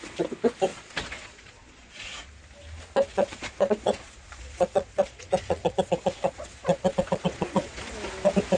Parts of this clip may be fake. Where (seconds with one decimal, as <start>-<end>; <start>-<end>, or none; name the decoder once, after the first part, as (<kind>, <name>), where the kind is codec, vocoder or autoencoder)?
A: 0.7-2.3 (vocoder, Vocos); 3.1-7.8